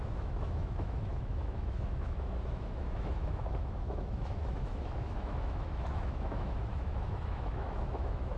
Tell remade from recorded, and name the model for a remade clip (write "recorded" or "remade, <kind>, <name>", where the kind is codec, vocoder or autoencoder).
remade, autoencoder, DAC-VAE